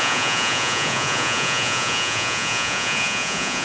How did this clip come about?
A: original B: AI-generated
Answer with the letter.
B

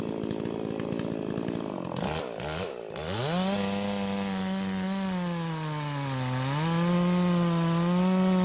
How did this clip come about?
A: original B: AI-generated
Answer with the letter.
A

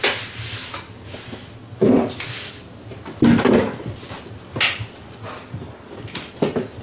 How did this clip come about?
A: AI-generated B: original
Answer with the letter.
B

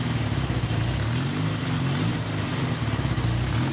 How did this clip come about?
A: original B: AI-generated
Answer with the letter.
A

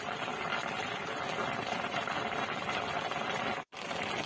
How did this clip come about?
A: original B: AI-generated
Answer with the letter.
A